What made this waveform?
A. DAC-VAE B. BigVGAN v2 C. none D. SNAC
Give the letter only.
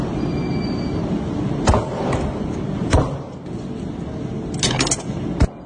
C